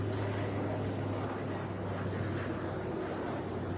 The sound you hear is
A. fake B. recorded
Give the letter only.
B